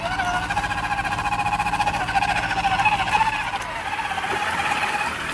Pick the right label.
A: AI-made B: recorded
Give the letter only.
B